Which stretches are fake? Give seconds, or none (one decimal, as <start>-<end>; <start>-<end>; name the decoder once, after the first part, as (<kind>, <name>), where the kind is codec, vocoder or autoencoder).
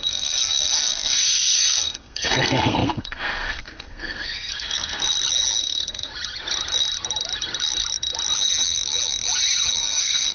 0.0-5.0 (codec, SNAC); 5.6-6.1; 9.8-10.3